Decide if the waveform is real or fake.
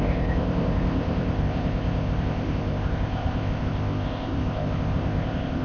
fake